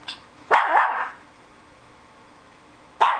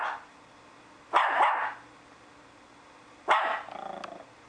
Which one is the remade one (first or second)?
first